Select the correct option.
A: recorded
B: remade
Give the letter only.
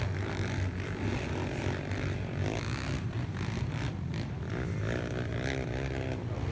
A